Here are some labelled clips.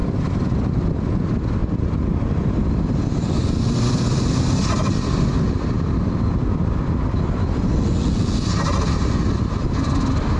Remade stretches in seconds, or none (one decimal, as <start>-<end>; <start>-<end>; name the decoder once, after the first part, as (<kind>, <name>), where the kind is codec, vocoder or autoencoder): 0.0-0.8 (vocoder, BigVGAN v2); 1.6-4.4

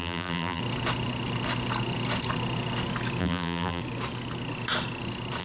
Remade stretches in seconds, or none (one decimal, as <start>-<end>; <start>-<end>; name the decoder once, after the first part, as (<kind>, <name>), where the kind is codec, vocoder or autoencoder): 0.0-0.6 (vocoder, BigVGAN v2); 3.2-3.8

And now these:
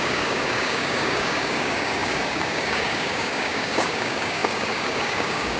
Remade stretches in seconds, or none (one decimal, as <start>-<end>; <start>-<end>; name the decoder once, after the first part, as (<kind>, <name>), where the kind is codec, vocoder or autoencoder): 0.0-5.6 (codec, DAC)